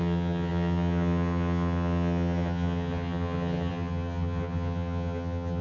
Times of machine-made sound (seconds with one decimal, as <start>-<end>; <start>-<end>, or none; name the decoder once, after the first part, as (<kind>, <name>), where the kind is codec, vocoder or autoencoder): 0.0-5.6 (vocoder, HiFi-GAN)